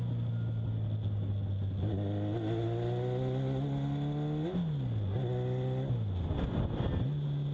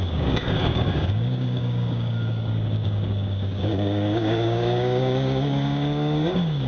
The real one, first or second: first